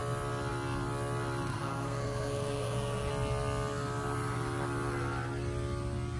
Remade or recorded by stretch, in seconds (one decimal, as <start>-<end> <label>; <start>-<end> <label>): 0.0-1.5 recorded; 1.5-3.1 remade; 3.1-6.2 recorded